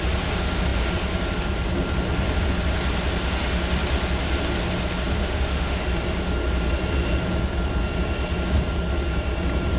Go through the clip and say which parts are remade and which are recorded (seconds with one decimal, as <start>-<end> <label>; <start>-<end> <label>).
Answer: 0.0-5.2 recorded; 5.2-5.8 remade; 5.8-9.8 recorded